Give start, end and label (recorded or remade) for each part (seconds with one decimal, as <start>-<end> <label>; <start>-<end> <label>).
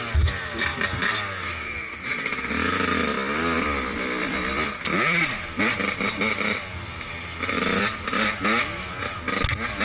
0.0-9.8 recorded